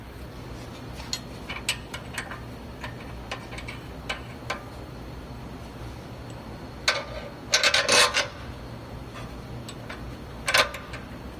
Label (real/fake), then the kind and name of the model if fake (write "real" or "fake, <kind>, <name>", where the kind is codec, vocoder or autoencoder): real